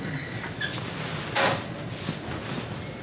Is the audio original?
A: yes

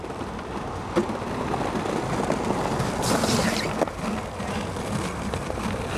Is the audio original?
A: yes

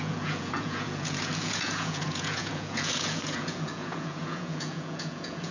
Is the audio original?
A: no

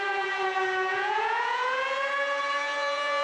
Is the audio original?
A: no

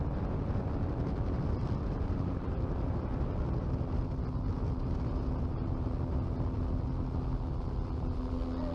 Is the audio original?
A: yes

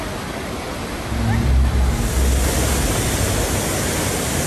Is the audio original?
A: yes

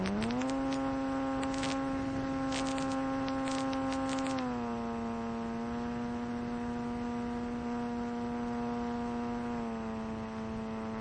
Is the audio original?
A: yes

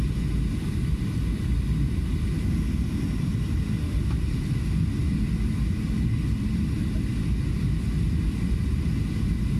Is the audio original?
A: yes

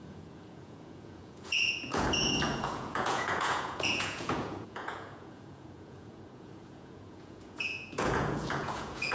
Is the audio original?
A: no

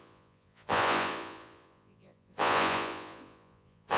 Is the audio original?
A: no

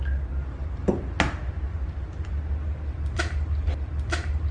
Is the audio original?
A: yes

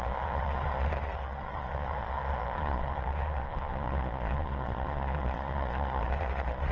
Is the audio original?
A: no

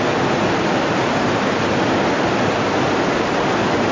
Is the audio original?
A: yes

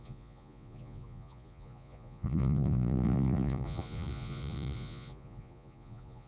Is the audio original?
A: no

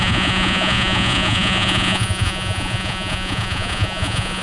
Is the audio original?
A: no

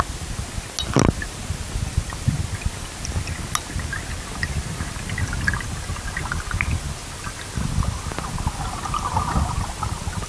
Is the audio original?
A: yes